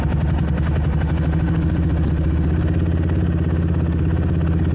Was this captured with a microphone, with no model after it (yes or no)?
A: yes